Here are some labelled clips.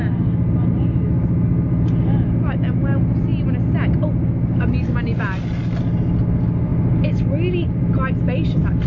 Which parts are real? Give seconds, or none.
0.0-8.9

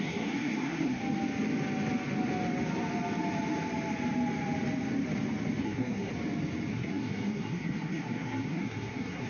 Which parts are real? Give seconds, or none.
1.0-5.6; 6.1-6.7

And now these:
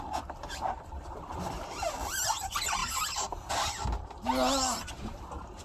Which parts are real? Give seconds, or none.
0.0-5.6

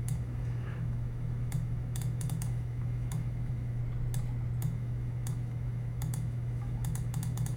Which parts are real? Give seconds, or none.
3.8-4.6

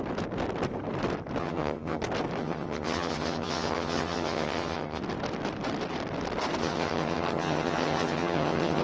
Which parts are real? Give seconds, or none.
0.0-1.4; 2.0-2.4; 5.0-6.6

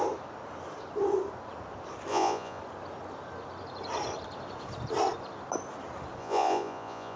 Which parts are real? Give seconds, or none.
0.0-2.1; 2.6-6.2

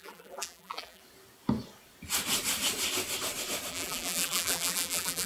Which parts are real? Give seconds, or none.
1.0-3.7

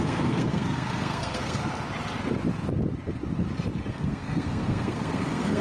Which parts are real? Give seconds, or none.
1.6-3.9